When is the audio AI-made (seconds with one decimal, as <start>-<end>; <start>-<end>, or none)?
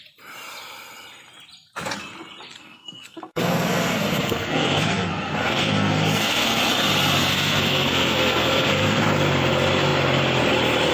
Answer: 2.6-6.6; 7.2-9.0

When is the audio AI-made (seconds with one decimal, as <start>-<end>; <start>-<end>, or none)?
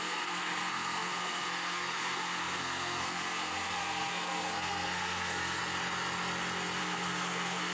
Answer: 0.0-5.6; 6.8-7.7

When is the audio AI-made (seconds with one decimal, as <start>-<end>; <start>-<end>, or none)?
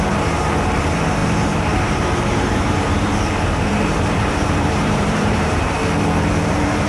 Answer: 0.0-5.8; 6.5-6.9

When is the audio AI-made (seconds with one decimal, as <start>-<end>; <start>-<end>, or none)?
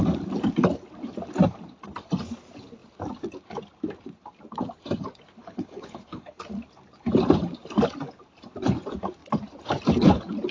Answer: 5.4-6.4